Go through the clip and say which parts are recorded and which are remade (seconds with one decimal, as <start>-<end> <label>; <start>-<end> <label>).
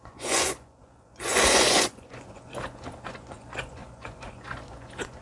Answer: 0.0-5.2 remade